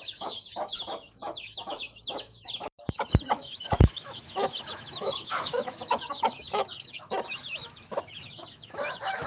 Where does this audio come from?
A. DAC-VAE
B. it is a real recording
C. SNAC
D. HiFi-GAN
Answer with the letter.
A